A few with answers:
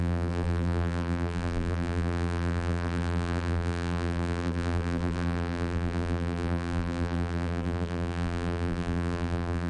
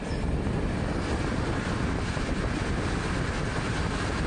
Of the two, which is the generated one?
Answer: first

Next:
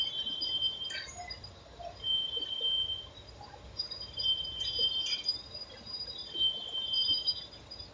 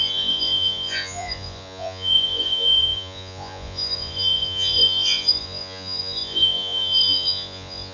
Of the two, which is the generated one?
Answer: second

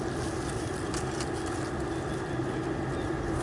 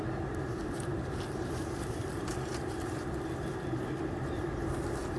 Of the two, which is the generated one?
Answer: second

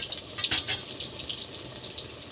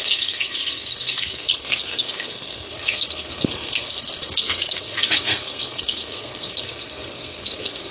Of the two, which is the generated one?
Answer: second